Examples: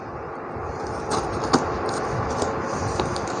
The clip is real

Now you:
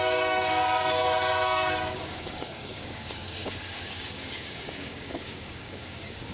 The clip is fake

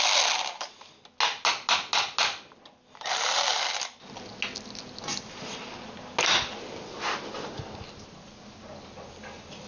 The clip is real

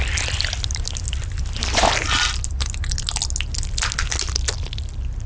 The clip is real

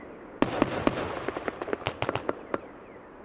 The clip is real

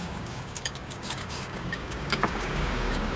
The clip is fake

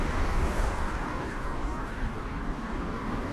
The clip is fake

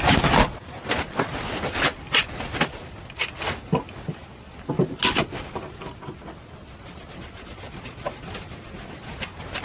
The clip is real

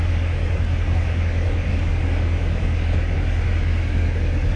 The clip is fake